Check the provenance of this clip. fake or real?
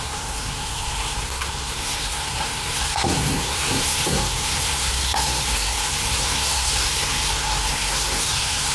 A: fake